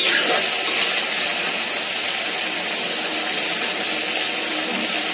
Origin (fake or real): real